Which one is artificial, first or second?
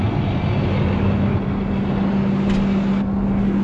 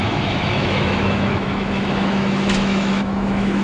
second